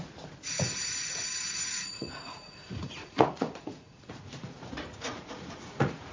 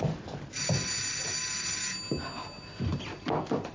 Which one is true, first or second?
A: second